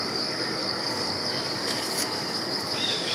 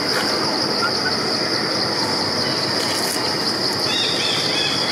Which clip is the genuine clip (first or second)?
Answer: second